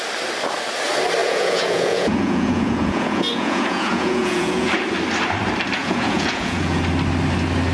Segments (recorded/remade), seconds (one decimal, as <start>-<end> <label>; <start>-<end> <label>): 0.0-1.2 recorded; 1.2-4.7 remade; 4.7-5.8 recorded; 5.8-6.8 remade; 6.8-7.7 recorded